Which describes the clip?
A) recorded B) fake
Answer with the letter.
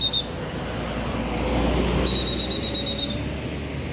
A